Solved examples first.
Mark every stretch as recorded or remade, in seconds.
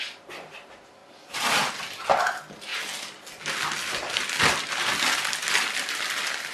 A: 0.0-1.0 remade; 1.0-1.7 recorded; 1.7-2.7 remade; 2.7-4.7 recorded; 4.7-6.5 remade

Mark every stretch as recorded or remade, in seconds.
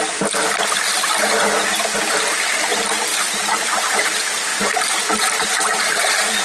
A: 0.0-3.1 recorded; 3.1-4.0 remade; 4.0-4.5 recorded; 4.5-6.4 remade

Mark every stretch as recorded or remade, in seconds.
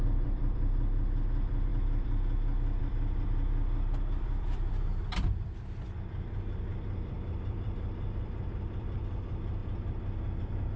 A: 0.0-10.8 remade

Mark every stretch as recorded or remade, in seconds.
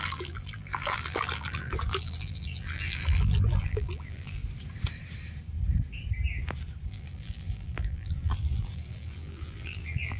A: 0.0-4.4 remade; 4.4-6.9 recorded; 6.9-10.2 remade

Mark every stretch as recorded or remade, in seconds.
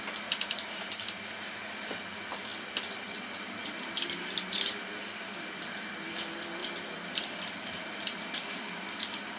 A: 0.0-9.4 remade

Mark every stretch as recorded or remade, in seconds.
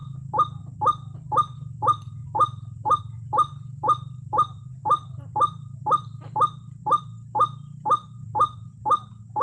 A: 0.0-2.2 recorded; 2.2-3.0 remade; 3.0-4.8 recorded; 4.8-7.0 remade; 7.0-9.4 recorded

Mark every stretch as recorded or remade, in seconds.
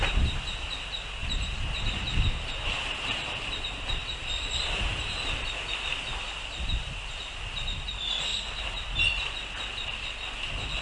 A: 0.0-1.2 recorded; 1.2-3.3 remade; 3.3-8.3 recorded; 8.3-9.1 remade; 9.1-10.8 recorded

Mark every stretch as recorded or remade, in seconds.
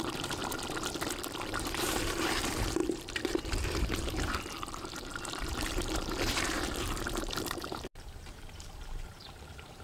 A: 0.0-0.4 remade; 0.4-1.3 recorded; 1.3-9.8 remade